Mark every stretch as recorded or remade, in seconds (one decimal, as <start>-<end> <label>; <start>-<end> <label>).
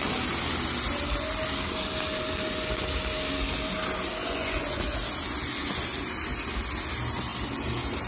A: 0.0-4.2 recorded; 4.2-4.8 remade; 4.8-8.1 recorded